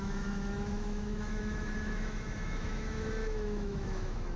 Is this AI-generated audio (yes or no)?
yes